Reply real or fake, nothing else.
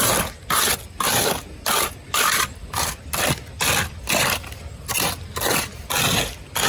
real